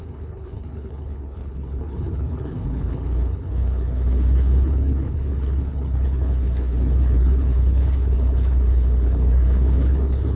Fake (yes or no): yes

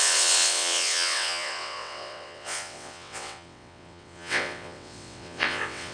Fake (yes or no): yes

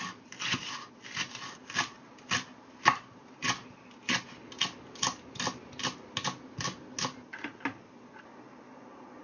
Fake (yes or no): no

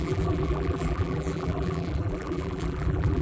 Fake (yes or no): yes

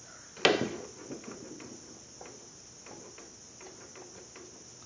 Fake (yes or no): no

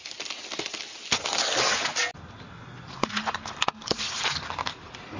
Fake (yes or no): no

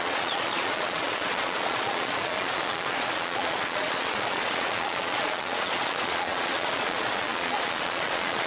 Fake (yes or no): yes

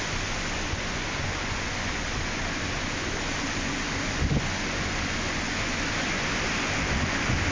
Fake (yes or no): yes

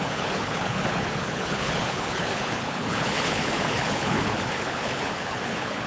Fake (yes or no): yes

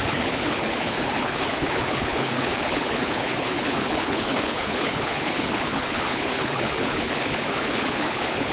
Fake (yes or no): yes